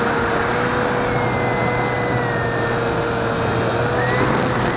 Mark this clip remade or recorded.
recorded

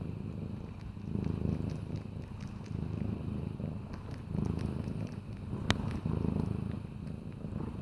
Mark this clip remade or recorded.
remade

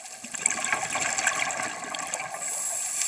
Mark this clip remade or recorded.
recorded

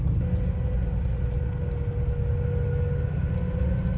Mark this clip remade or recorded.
recorded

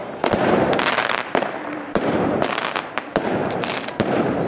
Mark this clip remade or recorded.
remade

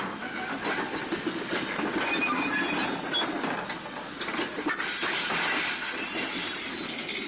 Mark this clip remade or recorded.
recorded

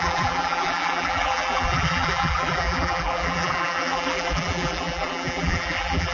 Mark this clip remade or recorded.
remade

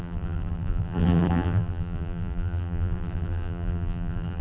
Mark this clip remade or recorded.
remade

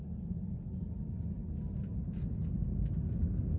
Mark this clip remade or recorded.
recorded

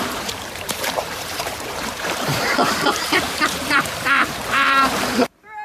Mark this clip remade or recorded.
remade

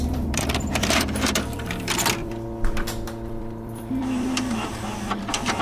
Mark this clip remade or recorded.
remade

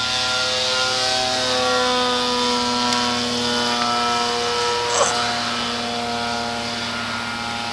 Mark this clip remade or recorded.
recorded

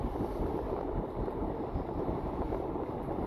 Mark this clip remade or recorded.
recorded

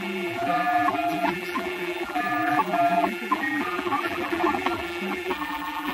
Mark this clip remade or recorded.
remade